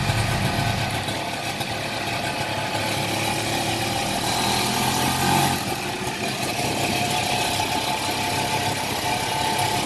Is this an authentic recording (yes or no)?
yes